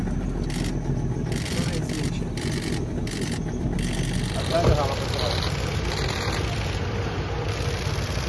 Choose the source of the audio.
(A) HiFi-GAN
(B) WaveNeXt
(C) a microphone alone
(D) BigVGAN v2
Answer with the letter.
C